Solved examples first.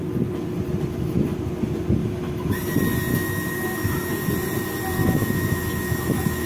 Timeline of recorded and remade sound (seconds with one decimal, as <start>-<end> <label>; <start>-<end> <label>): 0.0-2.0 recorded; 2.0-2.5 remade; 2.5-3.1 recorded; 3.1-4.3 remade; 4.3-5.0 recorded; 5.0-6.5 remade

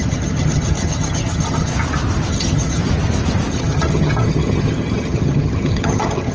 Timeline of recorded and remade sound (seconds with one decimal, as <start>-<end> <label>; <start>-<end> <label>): 0.0-1.7 remade; 1.7-2.3 recorded; 2.3-2.8 remade; 2.8-3.5 recorded; 3.5-6.3 remade

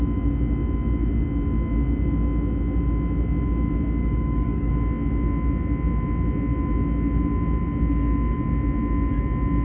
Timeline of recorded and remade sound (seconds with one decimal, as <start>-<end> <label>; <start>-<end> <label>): 0.0-4.0 recorded; 4.0-4.7 remade; 4.7-9.6 recorded

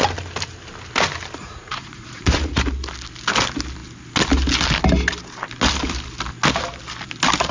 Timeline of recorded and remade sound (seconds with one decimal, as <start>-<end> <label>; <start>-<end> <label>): 0.0-1.4 recorded; 1.4-2.6 remade; 2.6-7.5 recorded